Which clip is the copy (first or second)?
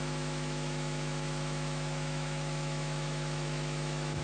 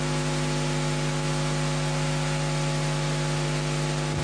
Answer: first